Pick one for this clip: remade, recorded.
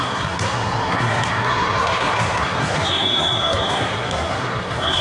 remade